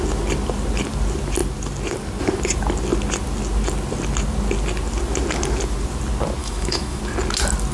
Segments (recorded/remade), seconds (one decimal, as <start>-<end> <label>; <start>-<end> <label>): 0.0-6.4 recorded; 6.4-7.0 remade; 7.0-7.7 recorded